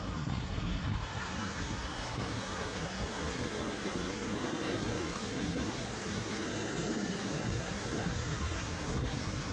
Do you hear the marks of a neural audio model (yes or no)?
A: yes